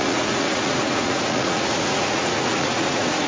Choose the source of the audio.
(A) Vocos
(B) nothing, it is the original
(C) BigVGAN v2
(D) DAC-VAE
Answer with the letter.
A